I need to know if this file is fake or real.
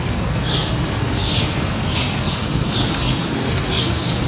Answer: fake